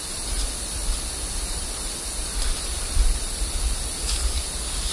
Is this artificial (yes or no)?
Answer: yes